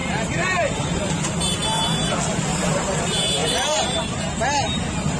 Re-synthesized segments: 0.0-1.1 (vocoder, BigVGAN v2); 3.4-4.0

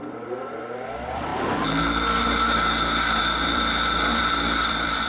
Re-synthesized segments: 0.0-1.3 (vocoder, BigVGAN v2); 3.2-5.1

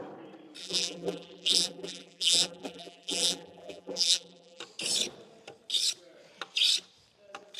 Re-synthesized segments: 0.6-4.6 (vocoder, BigVGAN v2)

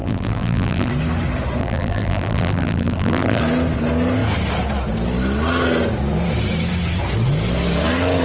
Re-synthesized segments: 0.0-0.9 (vocoder, BigVGAN v2); 1.6-3.4

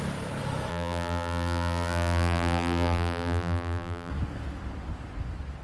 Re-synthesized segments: 0.7-4.1 (vocoder, BigVGAN v2)